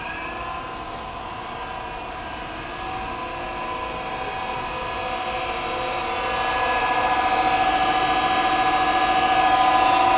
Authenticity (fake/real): real